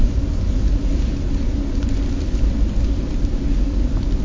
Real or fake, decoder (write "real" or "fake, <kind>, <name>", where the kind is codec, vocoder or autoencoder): real